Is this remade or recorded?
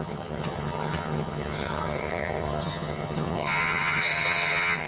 remade